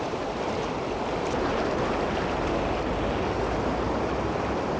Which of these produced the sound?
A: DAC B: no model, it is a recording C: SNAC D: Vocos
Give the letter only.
B